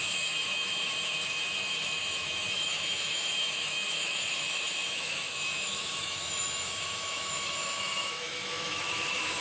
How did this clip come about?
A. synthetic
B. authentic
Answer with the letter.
A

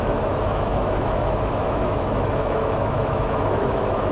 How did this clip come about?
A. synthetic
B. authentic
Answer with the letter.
A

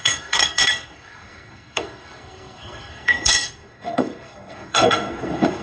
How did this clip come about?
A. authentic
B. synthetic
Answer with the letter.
B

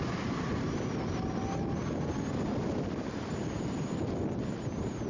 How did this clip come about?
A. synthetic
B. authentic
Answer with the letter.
B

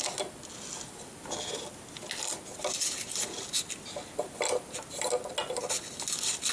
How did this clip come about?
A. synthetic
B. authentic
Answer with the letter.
B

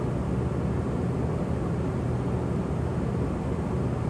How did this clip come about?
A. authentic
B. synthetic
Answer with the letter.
A